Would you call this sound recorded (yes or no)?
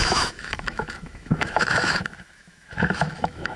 no